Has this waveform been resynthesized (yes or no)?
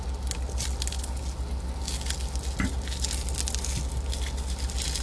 no